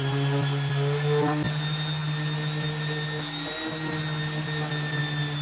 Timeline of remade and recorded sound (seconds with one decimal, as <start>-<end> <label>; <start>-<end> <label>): 0.0-5.4 recorded